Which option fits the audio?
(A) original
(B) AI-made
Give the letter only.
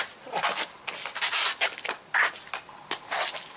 A